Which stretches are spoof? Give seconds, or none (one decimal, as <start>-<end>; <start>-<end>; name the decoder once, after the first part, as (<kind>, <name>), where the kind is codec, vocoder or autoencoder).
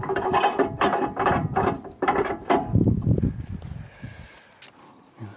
0.0-3.2 (vocoder, BigVGAN v2)